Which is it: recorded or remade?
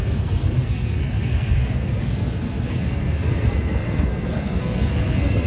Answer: remade